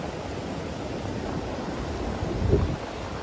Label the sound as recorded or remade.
recorded